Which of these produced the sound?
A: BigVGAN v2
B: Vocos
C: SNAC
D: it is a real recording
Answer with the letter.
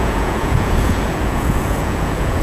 B